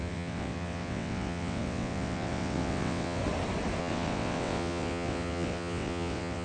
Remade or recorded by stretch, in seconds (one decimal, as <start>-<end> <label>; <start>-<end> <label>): 0.0-3.2 remade; 3.2-3.8 recorded; 3.8-6.4 remade